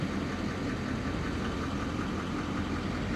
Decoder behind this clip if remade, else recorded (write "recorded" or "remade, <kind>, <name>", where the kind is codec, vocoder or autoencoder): recorded